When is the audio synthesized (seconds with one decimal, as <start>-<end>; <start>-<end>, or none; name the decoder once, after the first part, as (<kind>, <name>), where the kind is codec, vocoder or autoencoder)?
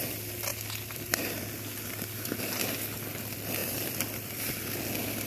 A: 0.5-2.6 (vocoder, BigVGAN v2); 3.6-4.5